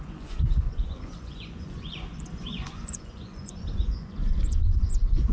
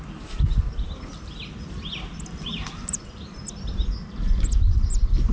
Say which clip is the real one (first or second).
second